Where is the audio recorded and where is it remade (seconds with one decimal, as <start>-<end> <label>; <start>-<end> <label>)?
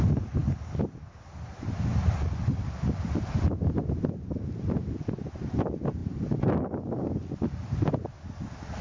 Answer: 0.0-8.8 recorded